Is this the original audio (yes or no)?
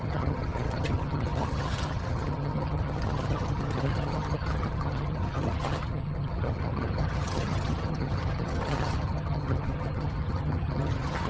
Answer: no